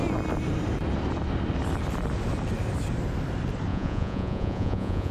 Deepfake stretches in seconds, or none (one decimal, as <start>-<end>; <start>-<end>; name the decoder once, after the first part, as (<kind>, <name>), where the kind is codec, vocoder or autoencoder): 3.7-5.1 (vocoder, Vocos)